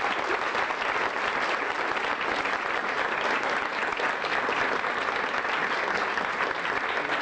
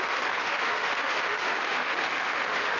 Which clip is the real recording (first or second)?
first